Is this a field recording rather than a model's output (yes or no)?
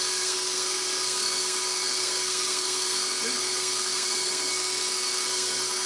no